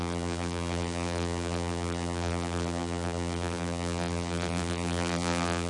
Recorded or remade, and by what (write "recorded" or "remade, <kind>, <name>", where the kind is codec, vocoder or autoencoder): remade, vocoder, BigVGAN v2